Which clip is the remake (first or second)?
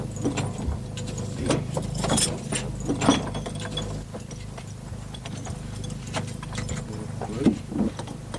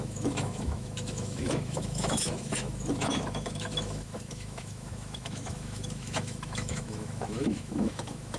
second